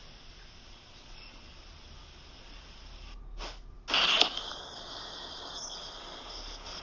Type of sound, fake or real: real